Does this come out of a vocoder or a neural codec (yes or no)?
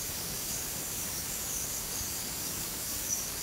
yes